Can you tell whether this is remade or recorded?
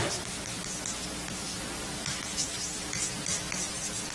recorded